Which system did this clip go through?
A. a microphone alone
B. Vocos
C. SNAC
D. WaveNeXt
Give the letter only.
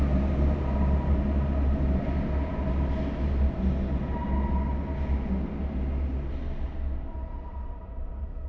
A